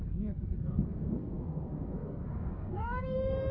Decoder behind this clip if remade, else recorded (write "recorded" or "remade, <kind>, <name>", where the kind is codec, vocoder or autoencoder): remade, codec, SNAC